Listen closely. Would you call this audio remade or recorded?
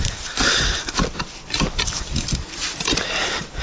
recorded